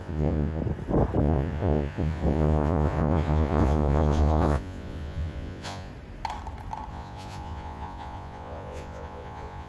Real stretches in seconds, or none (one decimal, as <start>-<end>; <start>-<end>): 0.6-1.2; 5.9-6.9